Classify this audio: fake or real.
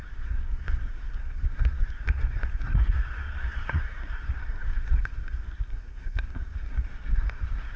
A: fake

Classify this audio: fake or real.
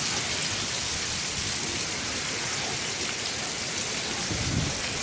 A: real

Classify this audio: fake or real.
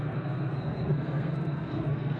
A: fake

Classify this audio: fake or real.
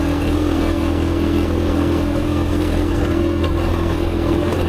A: fake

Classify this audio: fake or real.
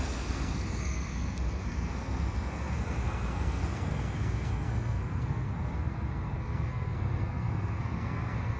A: fake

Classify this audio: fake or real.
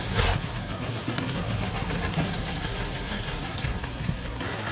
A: fake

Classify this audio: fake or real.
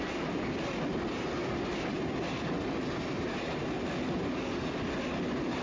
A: real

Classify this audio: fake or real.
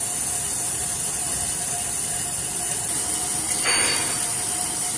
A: real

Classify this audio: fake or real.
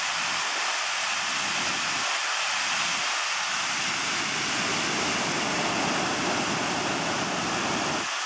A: real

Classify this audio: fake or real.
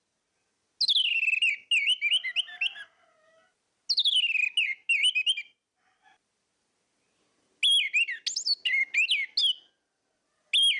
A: real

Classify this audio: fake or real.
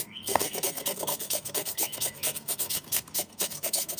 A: fake